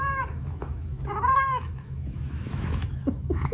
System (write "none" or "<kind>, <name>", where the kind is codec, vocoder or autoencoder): autoencoder, DAC-VAE